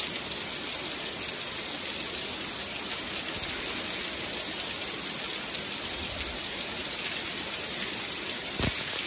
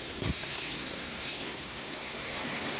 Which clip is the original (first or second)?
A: first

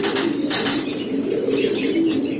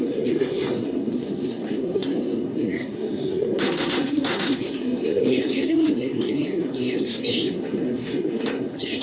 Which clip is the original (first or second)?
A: first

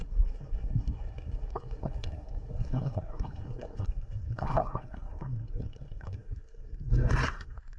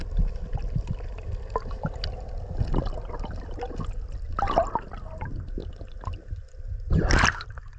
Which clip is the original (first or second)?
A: second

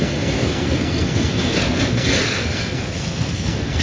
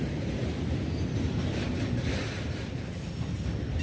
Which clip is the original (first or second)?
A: second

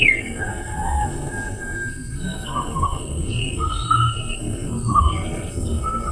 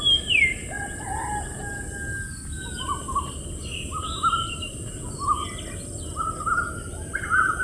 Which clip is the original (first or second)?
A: second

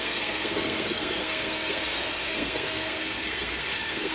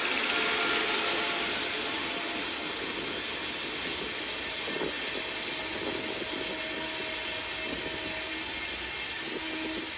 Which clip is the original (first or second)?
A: second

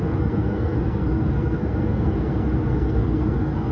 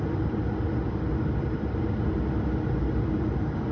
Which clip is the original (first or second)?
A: second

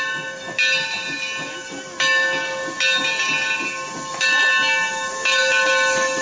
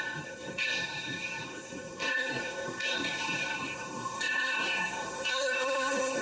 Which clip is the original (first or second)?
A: first